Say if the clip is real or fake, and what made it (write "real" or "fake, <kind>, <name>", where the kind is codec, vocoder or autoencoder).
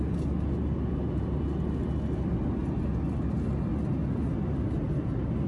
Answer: real